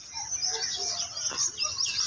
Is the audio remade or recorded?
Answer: recorded